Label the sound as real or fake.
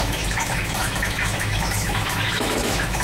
fake